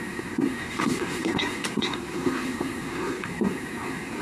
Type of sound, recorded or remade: remade